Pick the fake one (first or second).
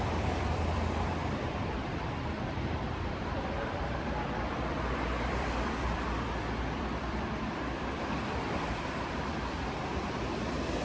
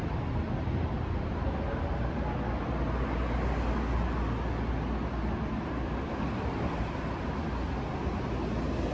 first